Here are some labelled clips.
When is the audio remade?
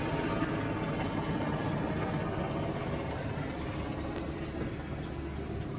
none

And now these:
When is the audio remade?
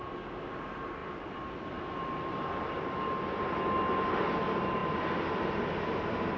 none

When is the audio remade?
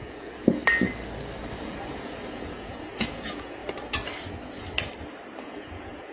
0.0-0.6 (vocoder, Vocos); 1.6-3.6; 5.4-6.1